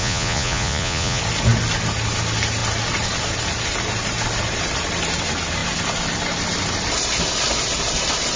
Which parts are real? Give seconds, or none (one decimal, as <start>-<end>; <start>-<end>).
1.2-8.4